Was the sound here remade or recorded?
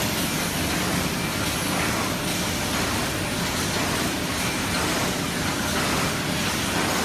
recorded